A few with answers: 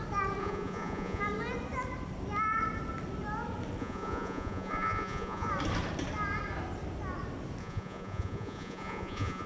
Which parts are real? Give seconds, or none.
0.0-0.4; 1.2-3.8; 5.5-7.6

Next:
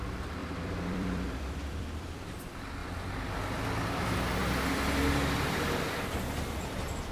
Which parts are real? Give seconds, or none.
0.0-0.4; 2.4-2.8; 3.4-7.1

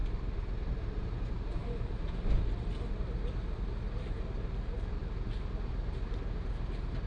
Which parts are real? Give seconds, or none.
0.0-7.1